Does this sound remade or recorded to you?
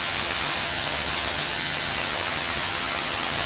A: remade